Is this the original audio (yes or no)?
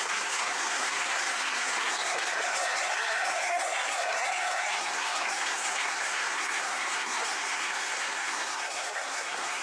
no